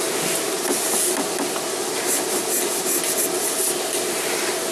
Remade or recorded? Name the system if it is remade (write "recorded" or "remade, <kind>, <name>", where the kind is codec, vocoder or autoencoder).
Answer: recorded